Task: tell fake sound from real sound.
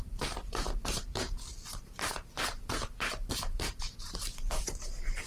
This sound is fake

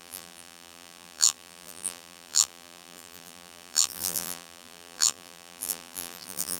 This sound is fake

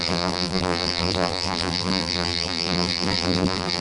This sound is fake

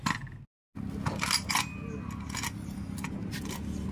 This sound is real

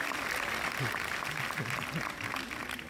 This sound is real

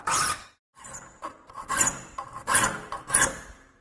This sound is fake